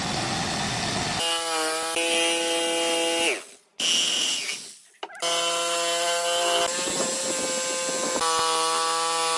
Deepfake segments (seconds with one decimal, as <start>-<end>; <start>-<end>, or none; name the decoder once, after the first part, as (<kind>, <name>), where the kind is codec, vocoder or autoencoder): none

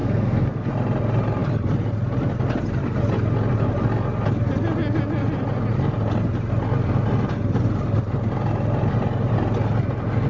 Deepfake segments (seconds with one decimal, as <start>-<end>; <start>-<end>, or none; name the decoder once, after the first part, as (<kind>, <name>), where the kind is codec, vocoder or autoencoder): 0.0-0.7 (codec, SNAC)

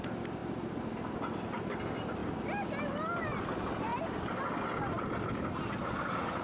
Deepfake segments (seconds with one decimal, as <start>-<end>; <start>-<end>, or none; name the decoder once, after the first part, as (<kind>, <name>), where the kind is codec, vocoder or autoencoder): none